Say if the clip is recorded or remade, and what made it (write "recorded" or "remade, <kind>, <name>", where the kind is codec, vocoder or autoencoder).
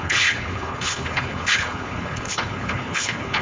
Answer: remade, codec, HILCodec